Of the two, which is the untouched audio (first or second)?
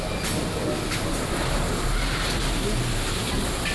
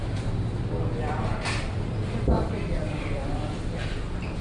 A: first